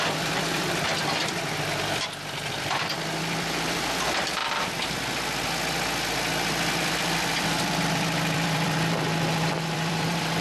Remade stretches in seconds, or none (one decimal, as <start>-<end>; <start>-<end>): 0.0-4.4; 6.7-10.4